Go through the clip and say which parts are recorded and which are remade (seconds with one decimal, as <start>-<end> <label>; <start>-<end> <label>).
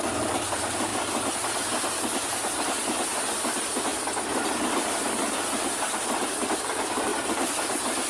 0.0-8.1 recorded